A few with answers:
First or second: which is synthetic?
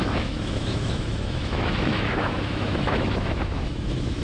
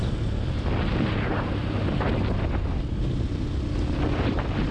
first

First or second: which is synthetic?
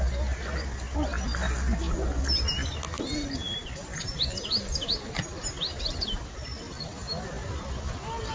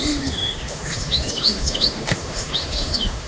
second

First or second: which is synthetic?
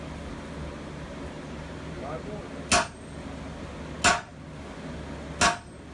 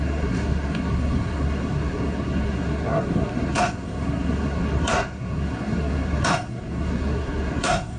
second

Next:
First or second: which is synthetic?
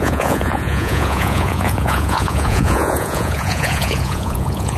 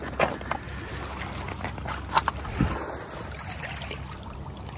first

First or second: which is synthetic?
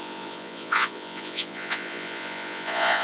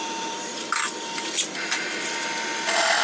first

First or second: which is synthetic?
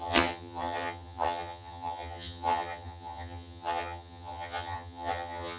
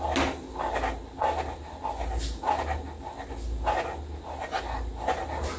first